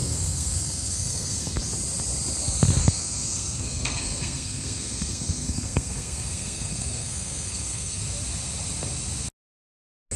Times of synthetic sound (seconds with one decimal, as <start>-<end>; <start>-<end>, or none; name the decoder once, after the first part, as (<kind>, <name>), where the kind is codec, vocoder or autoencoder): 0.0-1.6 (codec, SNAC); 2.8-8.0